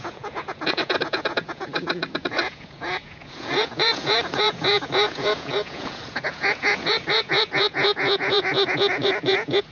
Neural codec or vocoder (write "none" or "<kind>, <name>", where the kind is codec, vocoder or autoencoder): vocoder, Vocos